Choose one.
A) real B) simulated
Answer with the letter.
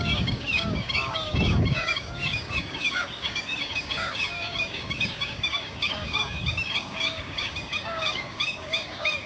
B